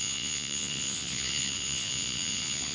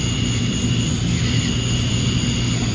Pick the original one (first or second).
second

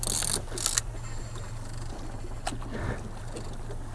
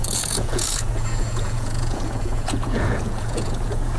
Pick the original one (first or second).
first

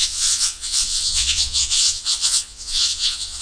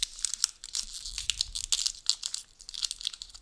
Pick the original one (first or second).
second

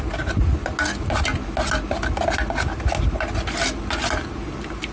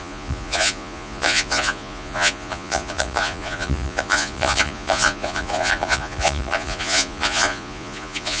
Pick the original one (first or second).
first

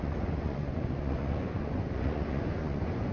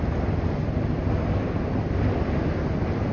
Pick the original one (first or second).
second